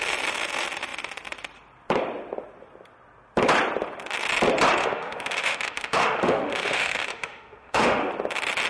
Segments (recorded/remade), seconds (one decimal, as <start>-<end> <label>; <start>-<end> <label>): 0.0-4.8 recorded; 4.8-8.1 remade; 8.1-8.7 recorded